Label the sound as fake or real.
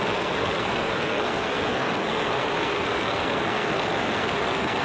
fake